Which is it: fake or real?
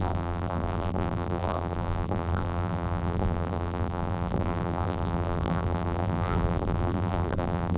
fake